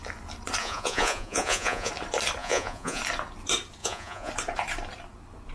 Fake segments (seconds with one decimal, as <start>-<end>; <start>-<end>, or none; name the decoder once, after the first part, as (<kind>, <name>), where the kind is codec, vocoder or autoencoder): 0.6-1.9 (vocoder, Vocos); 2.4-3.0; 3.8-4.3